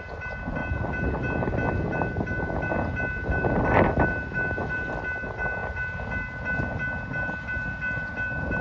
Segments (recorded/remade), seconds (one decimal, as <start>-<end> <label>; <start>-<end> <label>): 0.0-8.6 recorded